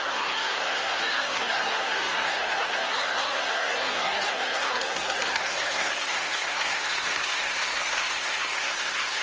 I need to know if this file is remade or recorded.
remade